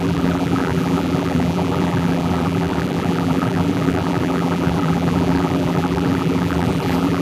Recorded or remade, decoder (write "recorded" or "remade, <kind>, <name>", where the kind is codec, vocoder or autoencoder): remade, vocoder, BigVGAN v2